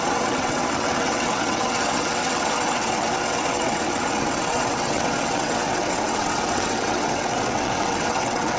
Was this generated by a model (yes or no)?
yes